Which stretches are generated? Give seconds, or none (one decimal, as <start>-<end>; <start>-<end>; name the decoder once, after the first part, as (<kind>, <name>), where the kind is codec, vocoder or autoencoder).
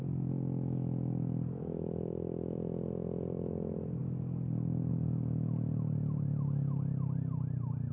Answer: none